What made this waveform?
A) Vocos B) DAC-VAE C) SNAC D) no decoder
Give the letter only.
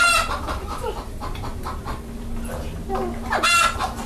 D